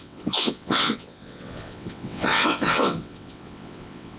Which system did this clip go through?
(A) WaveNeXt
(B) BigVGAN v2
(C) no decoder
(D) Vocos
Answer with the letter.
A